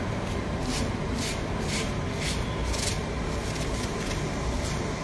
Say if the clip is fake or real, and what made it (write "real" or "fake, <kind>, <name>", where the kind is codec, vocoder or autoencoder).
real